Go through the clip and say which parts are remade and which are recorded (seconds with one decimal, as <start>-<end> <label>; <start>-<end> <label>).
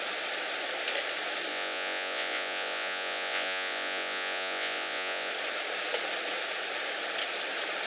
0.0-1.5 recorded; 1.5-5.3 remade; 5.3-7.9 recorded